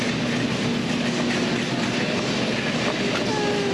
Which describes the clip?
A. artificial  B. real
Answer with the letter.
B